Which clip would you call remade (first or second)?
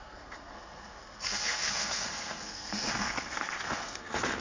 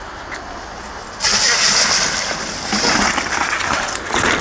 first